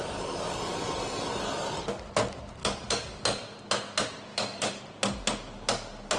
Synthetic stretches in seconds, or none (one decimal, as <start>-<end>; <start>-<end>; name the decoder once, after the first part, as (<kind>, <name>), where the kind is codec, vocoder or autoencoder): 2.6-3.2 (codec, DAC); 4.3-4.8